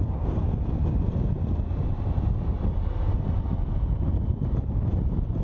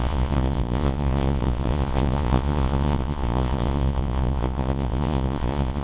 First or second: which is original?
first